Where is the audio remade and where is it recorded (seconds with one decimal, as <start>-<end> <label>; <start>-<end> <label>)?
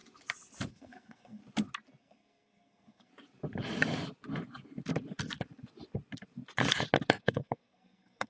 0.0-0.7 recorded; 0.7-1.4 remade; 1.4-2.0 recorded; 2.0-3.1 remade; 3.1-7.2 recorded; 7.2-8.3 remade